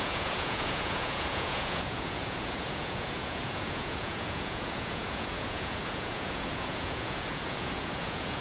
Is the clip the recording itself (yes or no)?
no